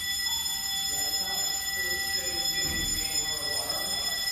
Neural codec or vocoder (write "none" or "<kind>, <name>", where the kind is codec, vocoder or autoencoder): none